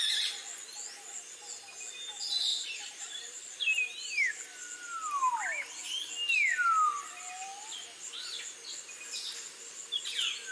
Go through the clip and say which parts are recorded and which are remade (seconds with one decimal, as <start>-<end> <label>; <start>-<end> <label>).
0.0-2.5 recorded; 2.5-4.3 remade; 4.3-10.5 recorded

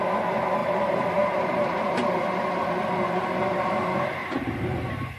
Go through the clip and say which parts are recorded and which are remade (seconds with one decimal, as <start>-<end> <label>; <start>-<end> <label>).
0.0-0.6 recorded; 0.6-3.7 remade; 3.7-5.2 recorded

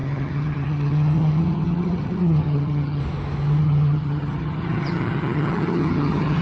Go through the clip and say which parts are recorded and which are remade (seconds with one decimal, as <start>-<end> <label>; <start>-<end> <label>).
0.0-3.0 remade; 3.0-3.6 recorded; 3.6-6.4 remade

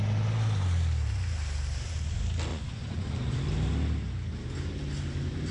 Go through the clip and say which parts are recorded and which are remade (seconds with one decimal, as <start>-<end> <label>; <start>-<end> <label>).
0.0-2.5 recorded; 2.5-3.4 remade; 3.4-5.5 recorded